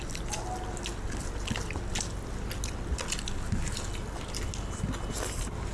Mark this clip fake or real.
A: real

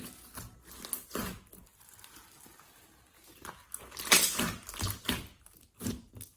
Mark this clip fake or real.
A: real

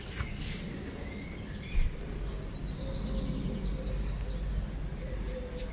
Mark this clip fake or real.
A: real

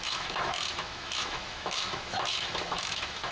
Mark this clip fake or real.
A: fake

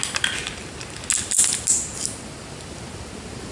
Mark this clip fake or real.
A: real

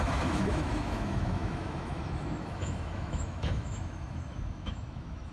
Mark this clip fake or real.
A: fake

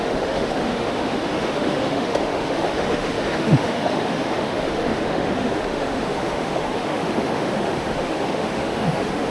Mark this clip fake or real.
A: fake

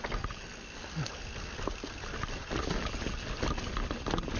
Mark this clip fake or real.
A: real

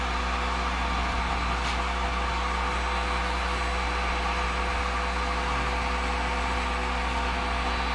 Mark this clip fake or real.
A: real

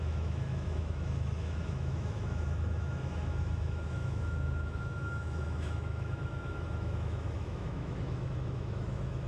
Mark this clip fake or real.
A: fake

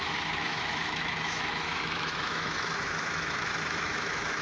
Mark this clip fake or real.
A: fake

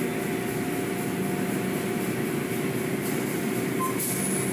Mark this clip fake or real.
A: real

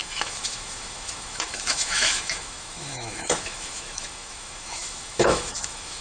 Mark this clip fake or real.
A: fake